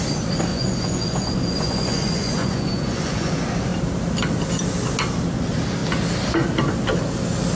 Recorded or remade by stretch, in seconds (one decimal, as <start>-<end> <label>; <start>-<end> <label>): 0.0-0.5 recorded; 0.5-3.3 remade; 3.3-7.5 recorded